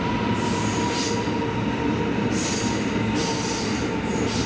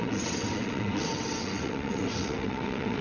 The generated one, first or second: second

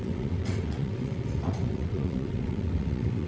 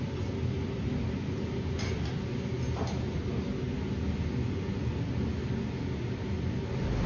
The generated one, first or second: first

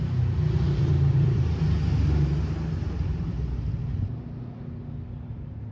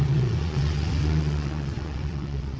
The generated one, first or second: second